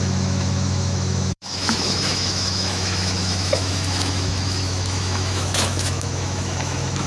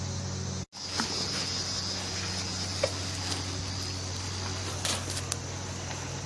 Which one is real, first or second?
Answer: second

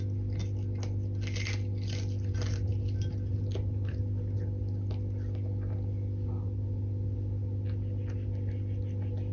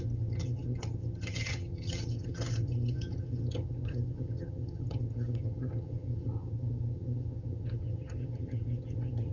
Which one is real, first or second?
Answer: first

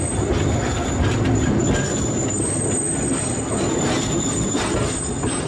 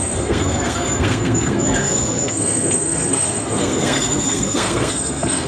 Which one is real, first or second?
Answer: first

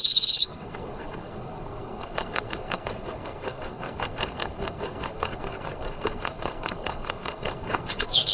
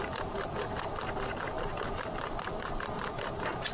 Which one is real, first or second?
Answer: second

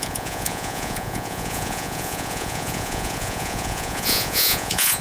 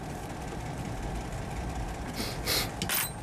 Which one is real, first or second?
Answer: second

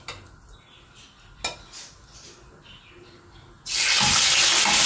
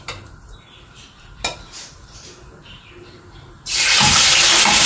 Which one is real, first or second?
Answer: first